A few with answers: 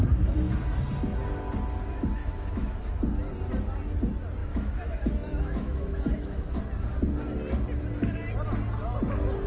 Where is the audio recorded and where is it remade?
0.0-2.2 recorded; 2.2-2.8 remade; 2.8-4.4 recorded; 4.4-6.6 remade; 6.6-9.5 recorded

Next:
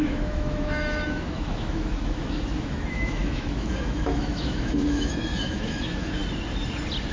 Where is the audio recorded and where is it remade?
0.0-6.2 remade; 6.2-7.1 recorded

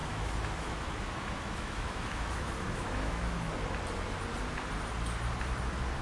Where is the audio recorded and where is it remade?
0.0-3.5 remade; 3.5-6.0 recorded

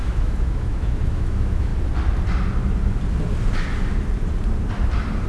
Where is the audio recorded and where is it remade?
0.0-1.7 remade; 1.7-5.3 recorded

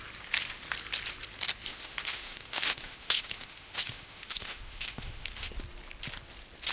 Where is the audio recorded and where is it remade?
0.0-1.7 recorded; 1.7-5.5 remade; 5.5-6.7 recorded